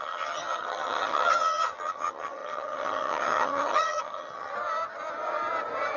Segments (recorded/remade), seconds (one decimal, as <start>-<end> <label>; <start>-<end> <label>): 0.0-4.5 remade; 4.5-6.0 recorded